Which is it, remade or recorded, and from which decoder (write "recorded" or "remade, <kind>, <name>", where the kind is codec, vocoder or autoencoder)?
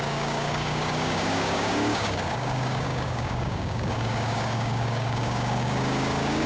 remade, codec, DAC